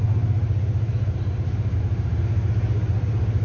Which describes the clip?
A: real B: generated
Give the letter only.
A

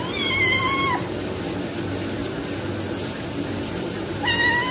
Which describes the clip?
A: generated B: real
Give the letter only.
B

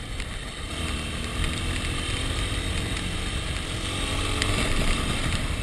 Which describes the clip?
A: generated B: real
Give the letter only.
B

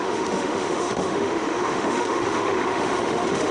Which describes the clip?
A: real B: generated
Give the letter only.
B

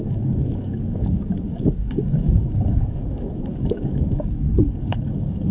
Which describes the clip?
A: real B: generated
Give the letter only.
B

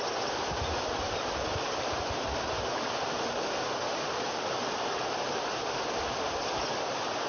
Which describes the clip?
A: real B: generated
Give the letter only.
B